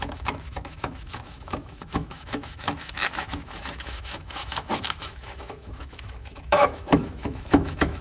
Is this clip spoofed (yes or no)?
yes